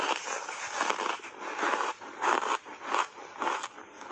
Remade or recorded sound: recorded